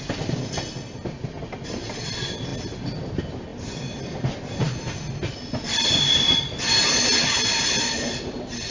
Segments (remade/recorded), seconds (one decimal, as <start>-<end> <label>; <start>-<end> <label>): 0.0-8.7 recorded